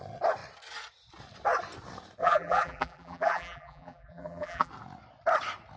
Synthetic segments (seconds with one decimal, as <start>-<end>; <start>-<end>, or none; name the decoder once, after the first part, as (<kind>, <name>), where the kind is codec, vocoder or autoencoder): 2.2-4.7 (vocoder, BigVGAN v2)